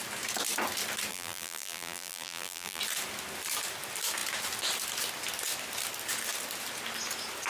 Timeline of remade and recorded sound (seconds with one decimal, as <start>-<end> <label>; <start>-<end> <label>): 0.0-1.1 recorded; 1.1-2.8 remade; 2.8-7.5 recorded